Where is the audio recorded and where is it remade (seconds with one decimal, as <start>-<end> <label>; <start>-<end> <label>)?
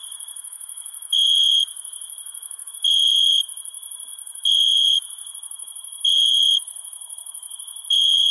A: 0.0-8.3 remade